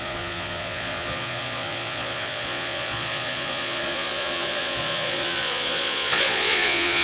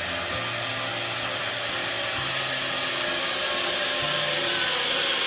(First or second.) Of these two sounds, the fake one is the first